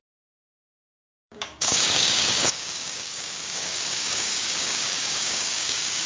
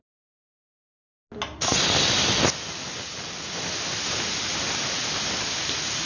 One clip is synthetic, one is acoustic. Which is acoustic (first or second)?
second